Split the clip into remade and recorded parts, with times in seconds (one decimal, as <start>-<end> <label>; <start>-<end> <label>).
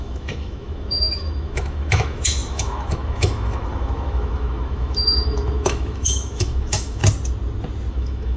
0.0-7.0 remade; 7.0-7.9 recorded; 7.9-8.4 remade